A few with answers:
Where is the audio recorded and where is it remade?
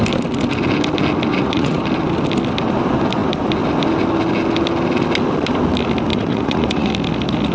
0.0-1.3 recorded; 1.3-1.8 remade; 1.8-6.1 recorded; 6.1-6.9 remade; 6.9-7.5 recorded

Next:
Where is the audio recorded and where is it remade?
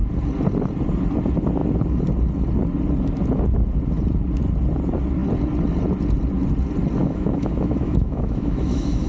0.0-7.0 recorded; 7.0-9.1 remade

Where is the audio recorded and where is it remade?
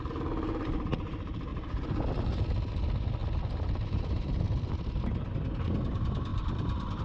0.0-3.2 recorded; 3.2-4.7 remade; 4.7-6.3 recorded; 6.3-7.0 remade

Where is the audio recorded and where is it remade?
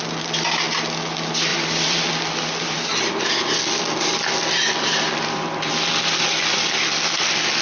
0.0-1.5 recorded; 1.5-6.1 remade; 6.1-6.5 recorded; 6.5-7.6 remade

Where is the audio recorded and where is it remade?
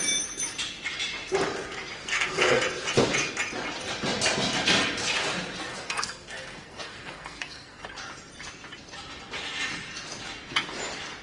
0.0-2.0 recorded; 2.0-2.6 remade; 2.6-5.7 recorded; 5.7-7.8 remade; 7.8-11.2 recorded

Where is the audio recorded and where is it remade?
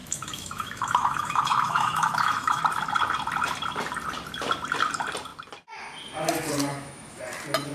0.0-2.6 remade; 2.6-6.7 recorded; 6.7-7.2 remade; 7.2-7.7 recorded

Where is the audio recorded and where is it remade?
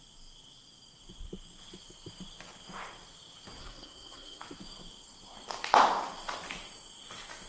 0.0-3.6 recorded; 3.6-4.4 remade; 4.4-7.5 recorded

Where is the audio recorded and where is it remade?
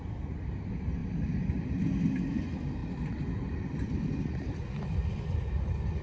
0.0-1.0 recorded; 1.0-1.7 remade; 1.7-2.8 recorded; 2.8-6.0 remade